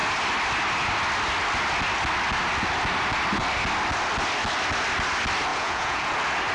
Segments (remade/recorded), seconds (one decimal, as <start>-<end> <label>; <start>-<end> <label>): 0.0-5.5 recorded; 5.5-6.1 remade; 6.1-6.5 recorded